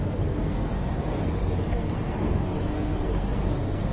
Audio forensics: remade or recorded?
remade